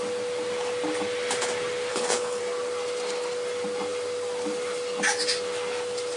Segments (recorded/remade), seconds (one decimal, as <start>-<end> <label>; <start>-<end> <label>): 0.0-1.9 recorded; 1.9-2.4 remade; 2.4-6.2 recorded